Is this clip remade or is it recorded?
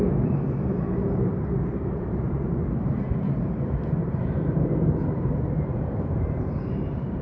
remade